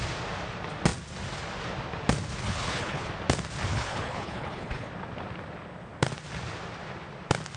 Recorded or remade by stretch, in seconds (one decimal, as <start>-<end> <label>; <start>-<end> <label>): 0.0-2.4 recorded; 2.4-3.1 remade; 3.1-3.7 recorded; 3.7-4.9 remade; 4.9-7.6 recorded